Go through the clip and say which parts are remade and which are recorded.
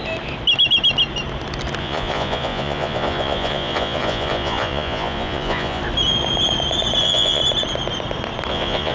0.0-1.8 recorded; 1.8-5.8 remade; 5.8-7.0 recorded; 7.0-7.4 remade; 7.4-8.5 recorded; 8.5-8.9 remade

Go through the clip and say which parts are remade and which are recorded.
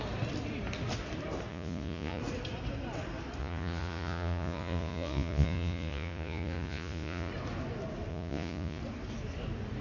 0.0-1.5 recorded; 1.5-2.2 remade; 2.2-3.4 recorded; 3.4-7.3 remade; 7.3-8.1 recorded; 8.1-8.8 remade; 8.8-9.8 recorded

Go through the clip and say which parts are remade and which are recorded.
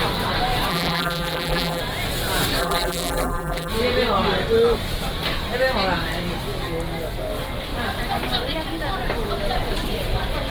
0.0-0.7 recorded; 0.7-1.8 remade; 1.8-2.6 recorded; 2.6-3.7 remade; 3.7-10.5 recorded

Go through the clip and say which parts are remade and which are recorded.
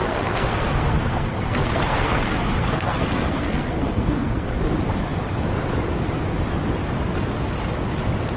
0.0-4.6 remade; 4.6-8.4 recorded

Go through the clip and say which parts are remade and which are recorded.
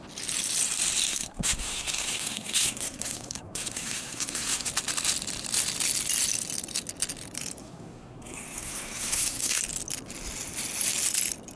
0.0-1.1 recorded; 1.1-4.7 remade; 4.7-7.6 recorded; 7.6-9.6 remade; 9.6-11.6 recorded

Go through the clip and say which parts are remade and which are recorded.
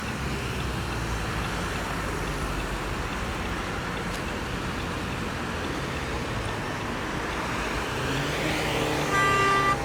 0.0-9.8 recorded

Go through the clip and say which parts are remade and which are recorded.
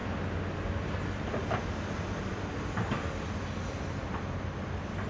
0.0-5.1 recorded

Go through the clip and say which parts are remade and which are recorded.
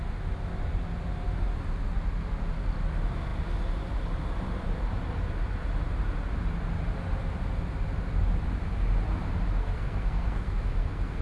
0.0-9.6 recorded; 9.6-11.2 remade